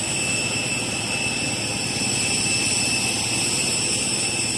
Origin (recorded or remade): recorded